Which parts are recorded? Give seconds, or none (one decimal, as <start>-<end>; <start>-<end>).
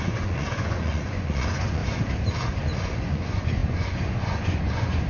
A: 1.8-2.6